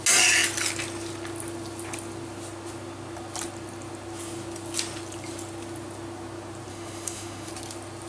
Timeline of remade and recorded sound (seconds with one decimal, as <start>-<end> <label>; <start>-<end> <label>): 0.0-6.7 recorded; 6.7-7.5 remade; 7.5-8.1 recorded